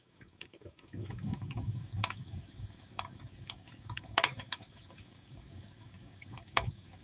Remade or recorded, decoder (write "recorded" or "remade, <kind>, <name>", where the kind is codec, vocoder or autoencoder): remade, codec, DAC